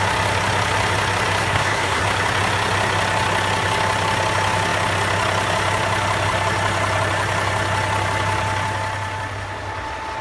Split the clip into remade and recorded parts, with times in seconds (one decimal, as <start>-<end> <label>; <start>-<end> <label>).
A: 0.0-1.4 recorded; 1.4-2.0 remade; 2.0-10.2 recorded